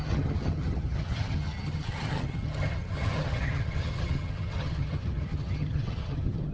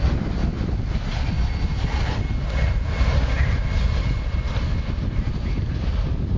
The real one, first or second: second